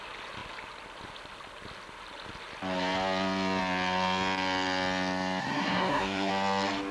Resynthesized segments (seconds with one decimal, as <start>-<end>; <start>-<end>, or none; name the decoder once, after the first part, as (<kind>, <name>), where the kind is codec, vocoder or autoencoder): 5.4-6.3 (codec, SNAC)